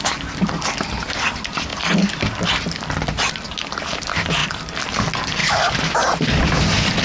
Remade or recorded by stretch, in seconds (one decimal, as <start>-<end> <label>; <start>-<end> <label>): 0.0-7.0 recorded